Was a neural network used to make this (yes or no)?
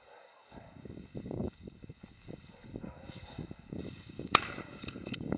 yes